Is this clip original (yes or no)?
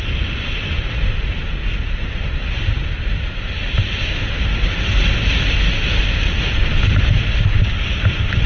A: yes